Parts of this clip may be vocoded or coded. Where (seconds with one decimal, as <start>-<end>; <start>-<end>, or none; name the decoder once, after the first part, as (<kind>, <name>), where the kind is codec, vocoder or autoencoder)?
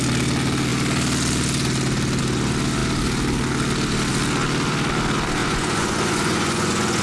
5.4-7.0 (vocoder, Vocos)